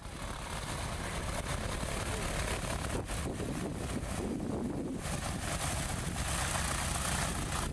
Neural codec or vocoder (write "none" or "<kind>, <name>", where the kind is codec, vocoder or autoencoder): none